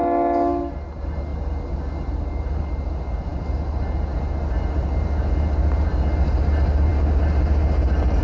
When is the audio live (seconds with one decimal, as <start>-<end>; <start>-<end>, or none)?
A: 0.0-8.2